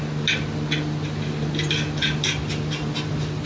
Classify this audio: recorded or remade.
recorded